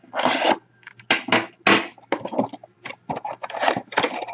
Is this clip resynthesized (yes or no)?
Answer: no